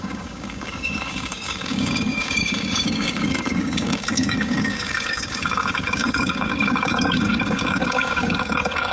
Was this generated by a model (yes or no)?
yes